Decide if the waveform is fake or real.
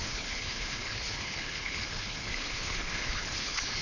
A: fake